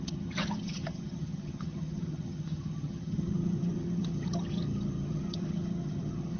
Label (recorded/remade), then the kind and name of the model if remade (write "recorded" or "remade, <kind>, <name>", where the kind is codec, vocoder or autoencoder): remade, vocoder, HiFi-GAN